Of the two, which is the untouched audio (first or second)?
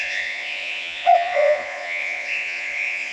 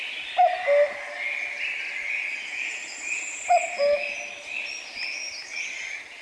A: second